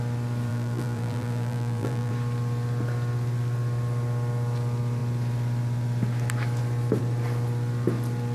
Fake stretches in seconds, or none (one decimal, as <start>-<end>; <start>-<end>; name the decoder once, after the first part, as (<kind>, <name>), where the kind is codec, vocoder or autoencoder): 0.5-2.1 (vocoder, BigVGAN v2)